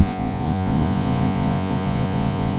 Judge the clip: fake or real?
fake